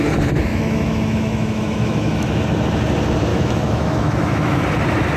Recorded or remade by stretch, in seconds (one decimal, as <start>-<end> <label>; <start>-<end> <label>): 0.0-0.5 recorded; 0.5-2.4 remade; 2.4-3.3 recorded; 3.3-4.6 remade; 4.6-5.2 recorded